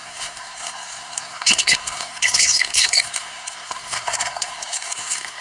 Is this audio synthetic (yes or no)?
yes